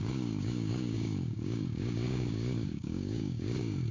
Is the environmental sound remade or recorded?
remade